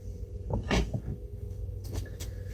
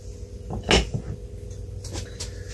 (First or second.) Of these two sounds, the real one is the second